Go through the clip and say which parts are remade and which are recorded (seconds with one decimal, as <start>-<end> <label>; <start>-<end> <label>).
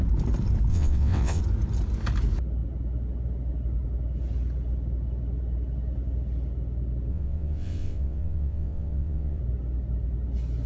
0.0-0.7 recorded; 0.7-1.4 remade; 1.4-7.1 recorded; 7.1-9.4 remade; 9.4-10.7 recorded